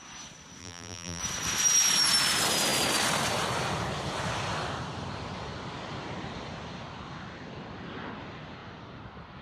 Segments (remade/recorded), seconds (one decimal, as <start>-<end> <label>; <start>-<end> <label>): 0.0-0.6 recorded; 0.6-1.2 remade; 1.2-9.4 recorded